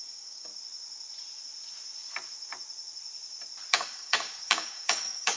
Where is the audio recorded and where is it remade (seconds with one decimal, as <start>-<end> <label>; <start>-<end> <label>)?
0.0-0.5 remade; 0.5-3.7 recorded; 3.7-5.4 remade